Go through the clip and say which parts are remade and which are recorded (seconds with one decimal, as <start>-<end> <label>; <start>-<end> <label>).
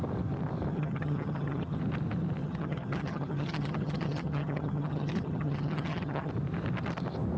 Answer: 0.0-0.7 recorded; 0.7-1.8 remade; 1.8-2.4 recorded; 2.4-6.3 remade; 6.3-7.4 recorded